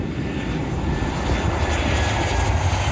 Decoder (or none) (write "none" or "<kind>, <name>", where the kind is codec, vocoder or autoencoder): none